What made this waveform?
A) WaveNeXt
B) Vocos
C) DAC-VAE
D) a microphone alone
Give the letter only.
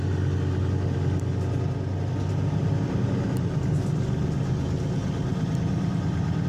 D